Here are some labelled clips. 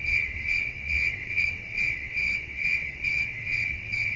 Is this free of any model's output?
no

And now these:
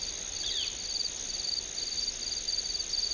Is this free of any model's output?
yes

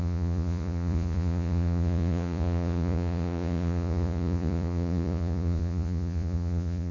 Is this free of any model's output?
no